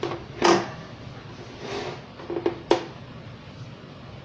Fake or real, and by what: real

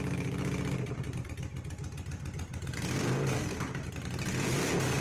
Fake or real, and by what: real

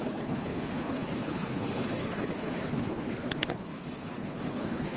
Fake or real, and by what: fake, codec, HILCodec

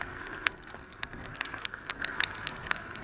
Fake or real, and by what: fake, codec, SNAC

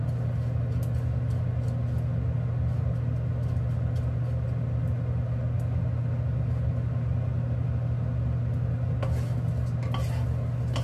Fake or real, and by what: real